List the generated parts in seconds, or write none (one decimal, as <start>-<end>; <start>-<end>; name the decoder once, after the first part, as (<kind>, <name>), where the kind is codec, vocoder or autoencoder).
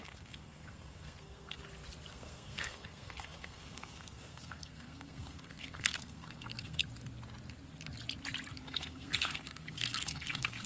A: 0.0-1.6 (codec, SNAC); 2.1-6.8; 8.5-10.7